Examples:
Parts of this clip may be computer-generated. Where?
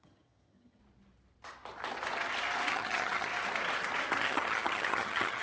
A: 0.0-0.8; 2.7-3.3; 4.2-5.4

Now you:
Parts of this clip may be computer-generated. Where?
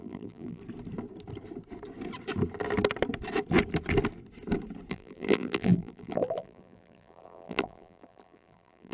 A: 0.0-0.6; 4.9-8.9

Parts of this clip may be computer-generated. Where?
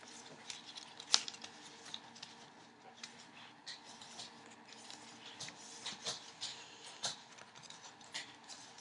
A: 6.5-7.3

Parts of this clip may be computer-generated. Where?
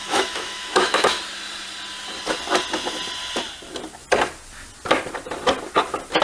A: 0.0-1.2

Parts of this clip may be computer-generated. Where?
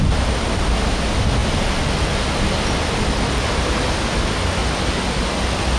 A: none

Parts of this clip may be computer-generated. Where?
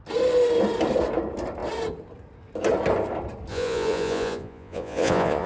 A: 3.5-5.5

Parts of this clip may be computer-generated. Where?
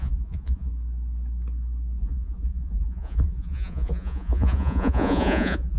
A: 0.0-0.7; 2.0-5.8